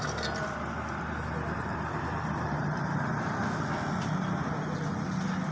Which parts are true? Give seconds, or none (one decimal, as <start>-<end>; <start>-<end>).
0.0-1.7; 3.4-5.5